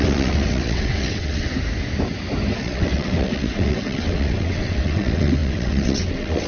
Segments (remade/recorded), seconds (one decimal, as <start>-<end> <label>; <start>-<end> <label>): 0.0-1.5 remade; 1.5-2.6 recorded; 2.6-6.5 remade

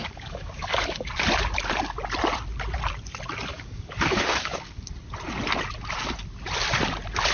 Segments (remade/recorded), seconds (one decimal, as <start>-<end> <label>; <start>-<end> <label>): 0.0-1.1 remade; 1.1-3.5 recorded; 3.5-4.8 remade; 4.8-7.3 recorded

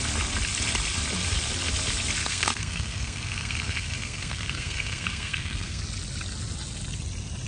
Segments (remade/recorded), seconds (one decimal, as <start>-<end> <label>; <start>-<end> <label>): 0.0-2.2 recorded; 2.2-5.8 remade; 5.8-7.5 recorded

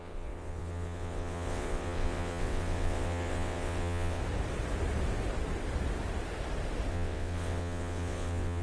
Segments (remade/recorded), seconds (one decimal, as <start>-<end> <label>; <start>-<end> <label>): 0.0-4.2 remade; 4.2-6.9 recorded; 6.9-8.6 remade

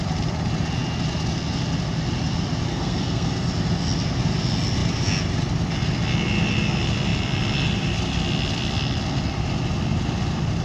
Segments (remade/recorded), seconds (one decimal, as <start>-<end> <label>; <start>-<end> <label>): 0.0-2.7 recorded; 2.7-3.5 remade; 3.5-10.6 recorded

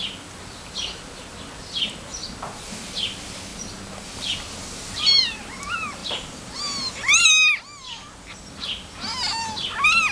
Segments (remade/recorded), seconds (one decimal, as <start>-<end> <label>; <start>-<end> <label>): 0.0-10.1 recorded

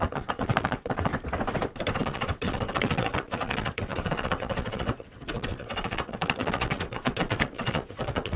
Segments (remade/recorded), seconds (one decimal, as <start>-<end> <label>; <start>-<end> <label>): 0.0-1.1 remade; 1.1-2.0 recorded; 2.0-8.4 remade

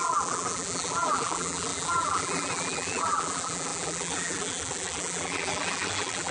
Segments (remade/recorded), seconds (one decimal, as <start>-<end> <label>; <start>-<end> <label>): 0.0-6.3 remade